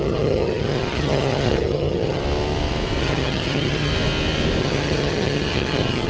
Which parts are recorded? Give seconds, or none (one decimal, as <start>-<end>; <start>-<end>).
2.2-3.0; 3.9-4.6